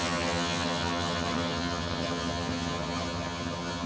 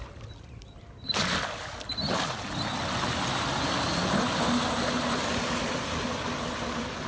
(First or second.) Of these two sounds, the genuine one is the second